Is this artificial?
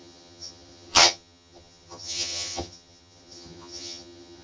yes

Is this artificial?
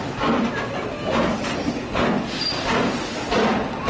no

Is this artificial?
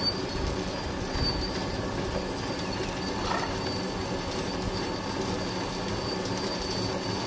no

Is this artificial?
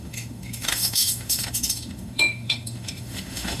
yes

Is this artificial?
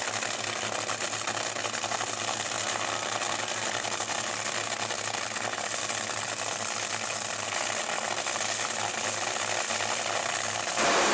no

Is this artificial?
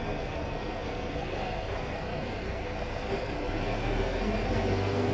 yes